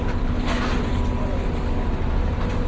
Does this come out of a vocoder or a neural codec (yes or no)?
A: no